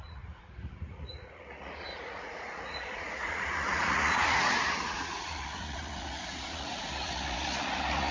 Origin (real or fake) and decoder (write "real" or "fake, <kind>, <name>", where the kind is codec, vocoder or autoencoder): fake, vocoder, Vocos